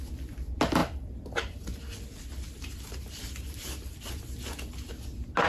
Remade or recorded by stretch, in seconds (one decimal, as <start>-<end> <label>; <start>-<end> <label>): 0.0-0.8 recorded; 0.8-4.1 remade; 4.1-5.5 recorded